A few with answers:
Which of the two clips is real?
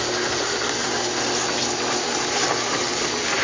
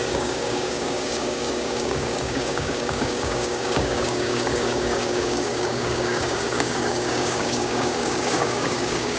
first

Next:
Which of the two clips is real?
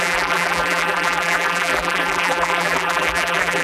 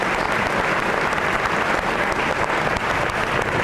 second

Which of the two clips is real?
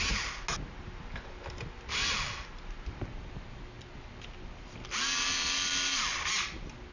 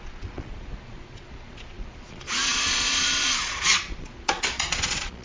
first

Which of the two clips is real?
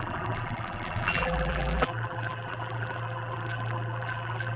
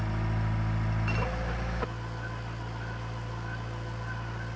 second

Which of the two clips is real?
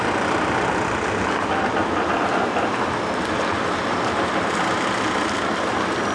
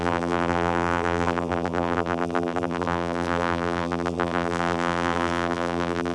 first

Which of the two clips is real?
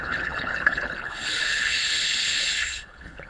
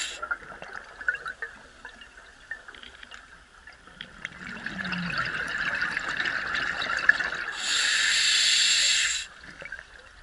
second